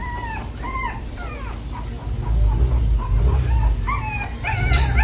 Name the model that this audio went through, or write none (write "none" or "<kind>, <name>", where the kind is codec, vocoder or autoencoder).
none